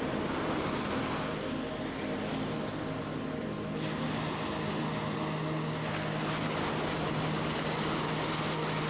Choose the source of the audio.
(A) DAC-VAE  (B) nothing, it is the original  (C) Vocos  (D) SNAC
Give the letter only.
B